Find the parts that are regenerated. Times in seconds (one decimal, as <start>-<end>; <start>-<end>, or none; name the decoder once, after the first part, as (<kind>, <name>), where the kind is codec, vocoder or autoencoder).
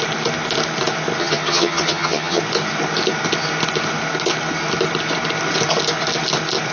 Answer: 1.2-2.4 (vocoder, HiFi-GAN)